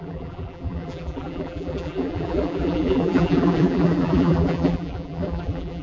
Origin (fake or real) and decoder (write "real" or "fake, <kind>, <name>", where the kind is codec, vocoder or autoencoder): fake, vocoder, BigVGAN v2